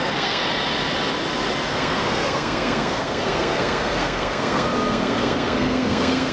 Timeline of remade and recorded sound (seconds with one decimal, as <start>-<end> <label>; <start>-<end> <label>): 0.0-0.4 remade; 0.4-1.7 recorded; 1.7-6.3 remade